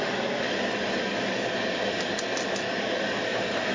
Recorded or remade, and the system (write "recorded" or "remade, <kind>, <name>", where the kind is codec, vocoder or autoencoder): recorded